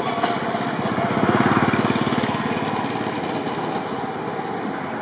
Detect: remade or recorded recorded